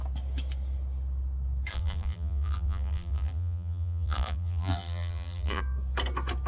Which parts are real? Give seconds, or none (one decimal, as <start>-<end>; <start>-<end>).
0.0-1.7; 5.6-6.5